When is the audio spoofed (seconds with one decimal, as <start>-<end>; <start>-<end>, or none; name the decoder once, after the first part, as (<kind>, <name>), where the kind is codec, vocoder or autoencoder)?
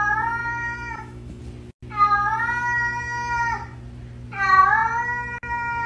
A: 0.4-1.4 (autoencoder, DAC-VAE)